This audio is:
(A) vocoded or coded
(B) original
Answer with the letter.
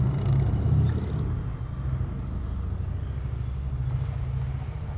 B